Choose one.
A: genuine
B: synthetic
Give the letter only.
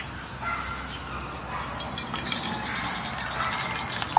A